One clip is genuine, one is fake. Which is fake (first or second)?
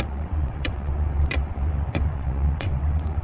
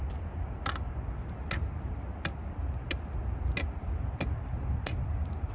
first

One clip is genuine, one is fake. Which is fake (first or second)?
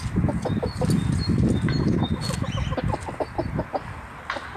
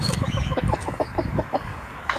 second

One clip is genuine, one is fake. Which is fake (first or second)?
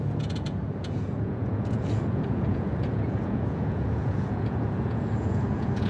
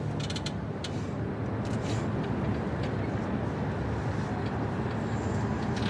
first